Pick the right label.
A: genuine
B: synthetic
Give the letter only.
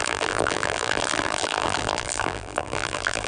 B